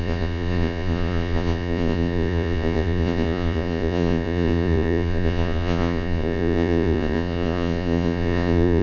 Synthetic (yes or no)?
yes